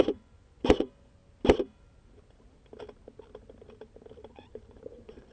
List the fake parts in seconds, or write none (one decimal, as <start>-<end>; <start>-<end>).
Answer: 0.0-1.2; 4.3-5.3